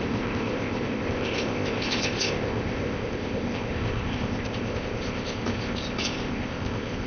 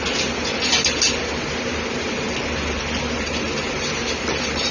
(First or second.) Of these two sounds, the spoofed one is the first